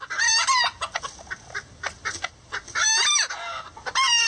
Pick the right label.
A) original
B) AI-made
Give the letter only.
A